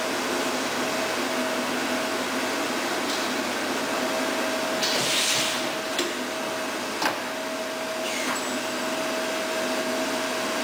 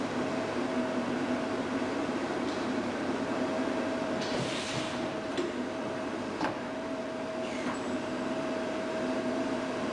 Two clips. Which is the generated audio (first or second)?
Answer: second